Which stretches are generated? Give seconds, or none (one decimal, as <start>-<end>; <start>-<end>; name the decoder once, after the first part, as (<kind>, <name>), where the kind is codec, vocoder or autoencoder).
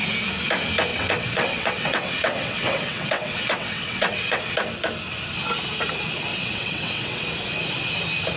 0.9-4.4 (vocoder, WaveNeXt); 6.3-7.2